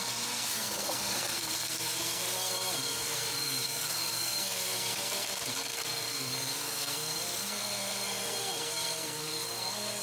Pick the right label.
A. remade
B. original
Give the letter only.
A